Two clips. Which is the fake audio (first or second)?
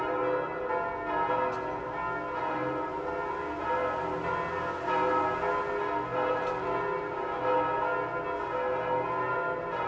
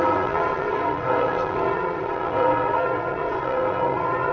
second